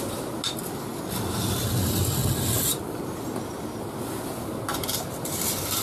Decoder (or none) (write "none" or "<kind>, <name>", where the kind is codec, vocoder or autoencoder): none